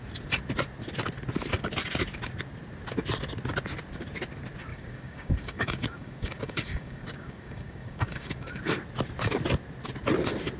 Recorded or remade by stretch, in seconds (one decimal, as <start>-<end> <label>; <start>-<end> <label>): 0.0-4.7 recorded; 4.7-8.6 remade; 8.6-10.6 recorded